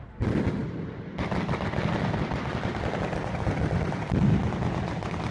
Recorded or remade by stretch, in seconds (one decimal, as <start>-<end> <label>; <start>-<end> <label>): 0.0-5.3 recorded